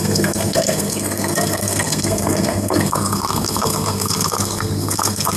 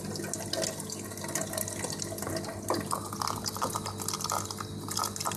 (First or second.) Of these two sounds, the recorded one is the second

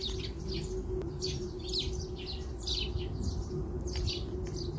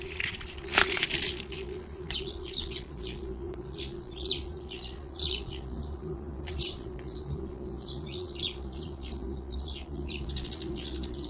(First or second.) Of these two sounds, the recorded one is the first